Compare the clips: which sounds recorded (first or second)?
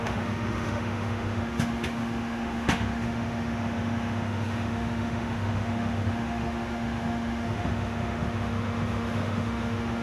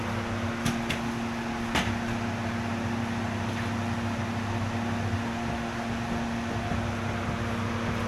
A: second